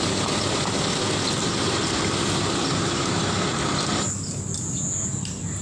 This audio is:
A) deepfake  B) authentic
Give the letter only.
B